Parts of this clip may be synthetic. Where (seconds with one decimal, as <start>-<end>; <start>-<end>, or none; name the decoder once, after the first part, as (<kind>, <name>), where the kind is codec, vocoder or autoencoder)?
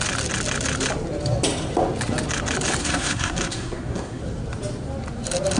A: 2.8-4.2 (codec, SNAC)